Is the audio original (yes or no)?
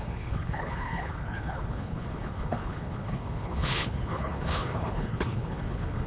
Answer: no